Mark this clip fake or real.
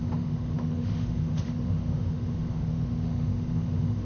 fake